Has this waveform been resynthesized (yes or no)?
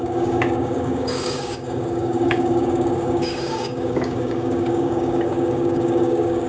yes